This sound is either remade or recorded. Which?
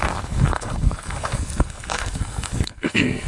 remade